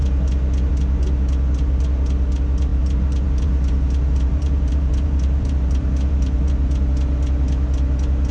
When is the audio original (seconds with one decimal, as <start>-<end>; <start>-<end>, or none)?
0.0-2.7; 6.5-8.3